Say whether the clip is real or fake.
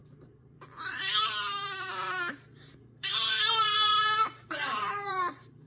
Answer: fake